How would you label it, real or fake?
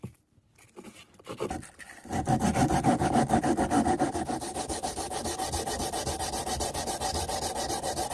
real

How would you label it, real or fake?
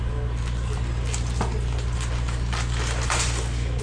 real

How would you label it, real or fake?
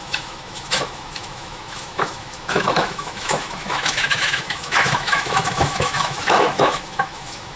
fake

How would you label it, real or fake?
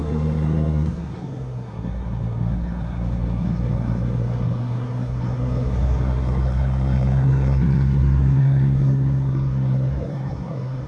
fake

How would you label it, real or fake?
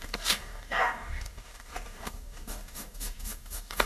fake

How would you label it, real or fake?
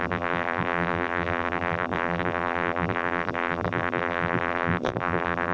fake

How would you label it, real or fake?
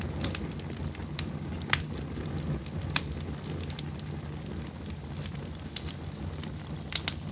real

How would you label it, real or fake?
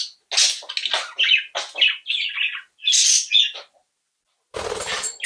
real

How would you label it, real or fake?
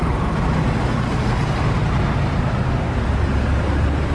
real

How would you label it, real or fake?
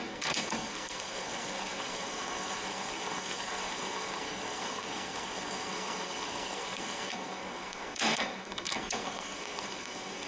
fake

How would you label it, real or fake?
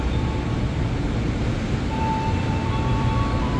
fake